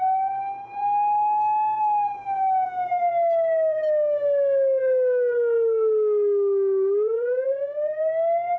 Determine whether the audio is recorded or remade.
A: recorded